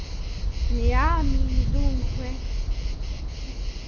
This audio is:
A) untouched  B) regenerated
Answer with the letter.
A